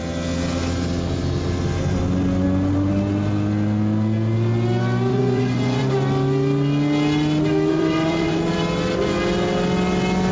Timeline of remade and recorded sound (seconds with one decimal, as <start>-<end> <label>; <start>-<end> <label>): 0.0-5.1 recorded; 5.1-5.8 remade; 5.8-7.7 recorded; 7.7-8.5 remade; 8.5-10.3 recorded